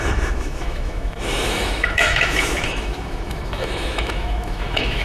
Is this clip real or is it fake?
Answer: fake